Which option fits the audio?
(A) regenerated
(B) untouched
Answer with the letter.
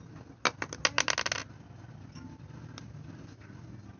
B